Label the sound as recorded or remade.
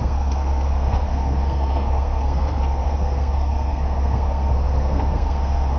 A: remade